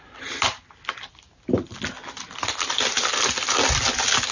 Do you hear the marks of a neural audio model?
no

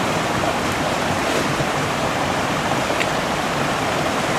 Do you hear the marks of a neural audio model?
yes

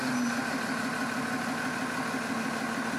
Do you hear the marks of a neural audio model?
no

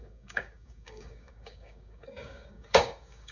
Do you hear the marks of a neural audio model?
yes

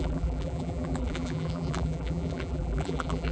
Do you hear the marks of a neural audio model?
yes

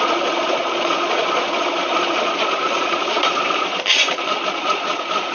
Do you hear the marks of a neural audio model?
yes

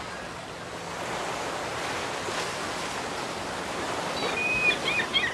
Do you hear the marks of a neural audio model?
no